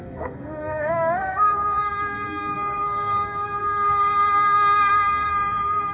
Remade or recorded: remade